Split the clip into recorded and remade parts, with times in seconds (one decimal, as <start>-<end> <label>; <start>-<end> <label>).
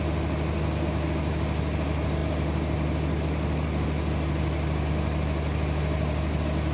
0.0-6.7 recorded